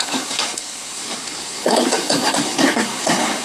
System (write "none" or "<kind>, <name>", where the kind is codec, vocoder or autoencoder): codec, SNAC